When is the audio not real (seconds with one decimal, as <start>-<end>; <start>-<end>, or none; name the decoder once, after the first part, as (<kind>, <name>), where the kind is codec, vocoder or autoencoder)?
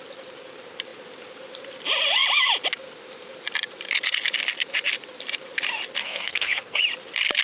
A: 6.0-6.8 (codec, SNAC)